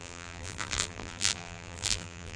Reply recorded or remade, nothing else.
remade